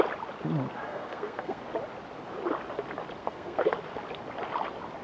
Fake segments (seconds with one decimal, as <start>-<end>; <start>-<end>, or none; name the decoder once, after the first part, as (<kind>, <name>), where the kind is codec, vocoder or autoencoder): 0.9-1.6 (codec, SNAC); 3.2-3.7